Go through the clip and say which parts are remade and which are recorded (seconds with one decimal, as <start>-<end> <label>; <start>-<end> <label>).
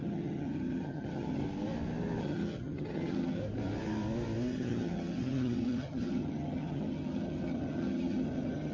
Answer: 0.0-1.4 remade; 1.4-2.2 recorded; 2.2-3.4 remade; 3.4-4.5 recorded; 4.5-8.7 remade